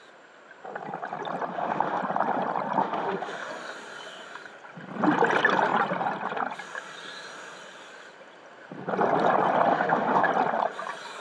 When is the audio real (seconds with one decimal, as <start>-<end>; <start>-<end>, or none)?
0.0-1.5; 2.0-2.8; 3.5-9.7; 10.3-11.2